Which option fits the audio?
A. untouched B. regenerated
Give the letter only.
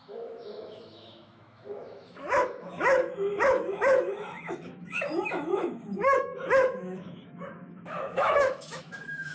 B